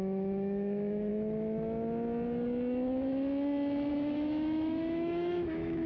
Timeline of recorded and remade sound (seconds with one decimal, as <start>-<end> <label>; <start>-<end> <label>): 0.0-1.1 remade; 1.1-3.9 recorded; 3.9-5.9 remade